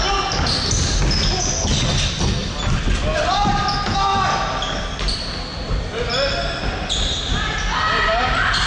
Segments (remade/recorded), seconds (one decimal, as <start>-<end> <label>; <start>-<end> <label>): 0.0-2.4 recorded; 2.4-3.6 remade; 3.6-8.7 recorded